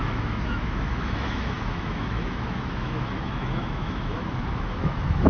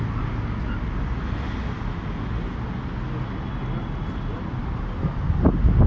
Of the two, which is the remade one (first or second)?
first